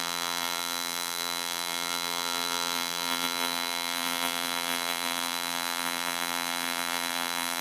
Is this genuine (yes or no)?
no